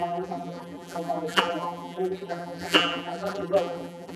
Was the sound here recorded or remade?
remade